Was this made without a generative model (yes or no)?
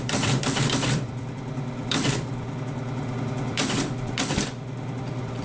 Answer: no